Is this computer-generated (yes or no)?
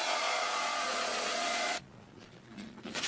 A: yes